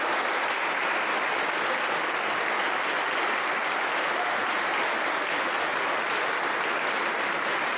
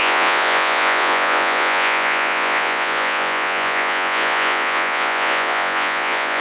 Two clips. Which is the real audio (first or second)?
first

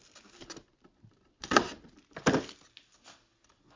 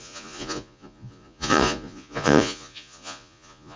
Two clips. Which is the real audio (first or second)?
first